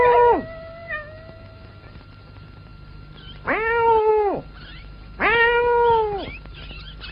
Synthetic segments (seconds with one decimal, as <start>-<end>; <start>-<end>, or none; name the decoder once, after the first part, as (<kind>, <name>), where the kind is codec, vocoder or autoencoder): none